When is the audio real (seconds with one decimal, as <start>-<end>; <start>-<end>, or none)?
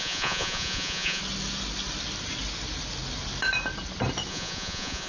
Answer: 1.2-4.3